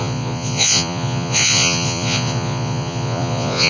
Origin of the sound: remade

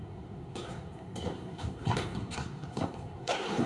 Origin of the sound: remade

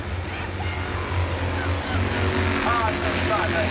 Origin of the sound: recorded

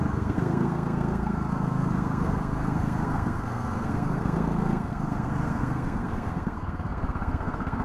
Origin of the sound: remade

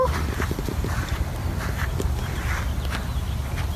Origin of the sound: recorded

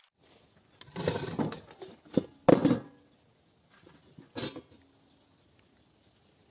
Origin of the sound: recorded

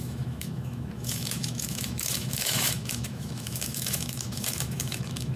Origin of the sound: remade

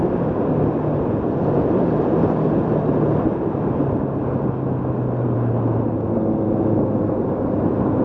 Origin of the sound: recorded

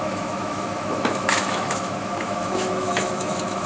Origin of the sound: remade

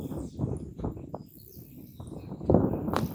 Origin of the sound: recorded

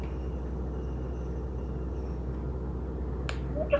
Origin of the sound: recorded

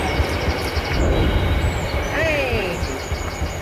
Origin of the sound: recorded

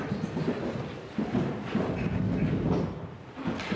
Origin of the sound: recorded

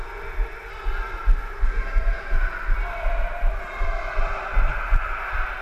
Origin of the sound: recorded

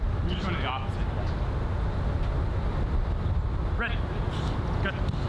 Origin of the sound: recorded